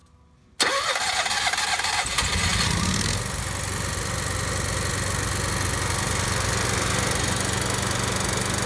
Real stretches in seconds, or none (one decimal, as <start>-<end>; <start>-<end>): 0.0-8.7